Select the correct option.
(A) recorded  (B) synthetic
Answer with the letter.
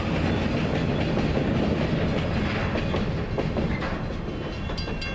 A